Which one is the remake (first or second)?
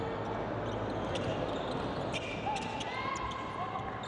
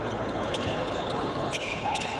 second